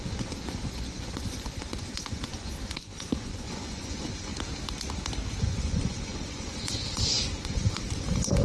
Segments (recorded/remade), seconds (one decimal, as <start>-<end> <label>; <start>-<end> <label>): 0.0-4.3 remade; 4.3-5.4 recorded; 5.4-8.4 remade